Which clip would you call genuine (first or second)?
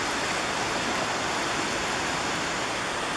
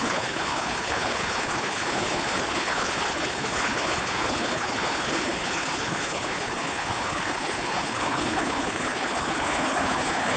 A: first